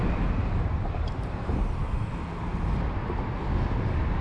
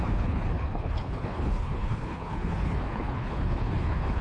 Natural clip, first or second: first